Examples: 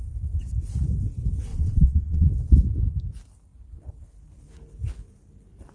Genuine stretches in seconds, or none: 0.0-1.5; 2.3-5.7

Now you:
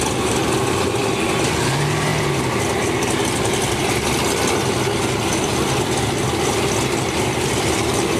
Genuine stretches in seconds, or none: 0.0-8.2